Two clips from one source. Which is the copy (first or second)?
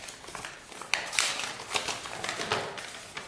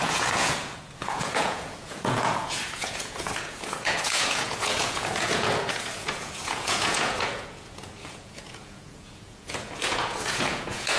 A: second